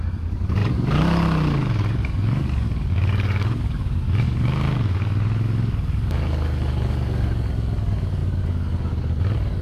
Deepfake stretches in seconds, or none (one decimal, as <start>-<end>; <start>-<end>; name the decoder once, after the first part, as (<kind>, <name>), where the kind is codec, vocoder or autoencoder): 0.0-9.6 (codec, DAC)